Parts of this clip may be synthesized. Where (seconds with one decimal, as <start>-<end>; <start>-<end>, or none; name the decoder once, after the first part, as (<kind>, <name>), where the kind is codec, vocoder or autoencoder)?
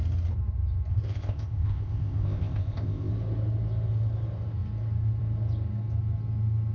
0.9-3.1 (codec, ZipCodec)